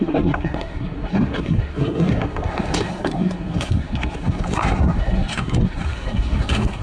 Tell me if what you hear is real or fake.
fake